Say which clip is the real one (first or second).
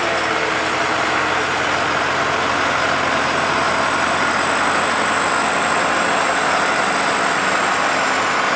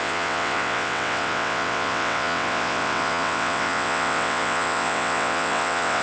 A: first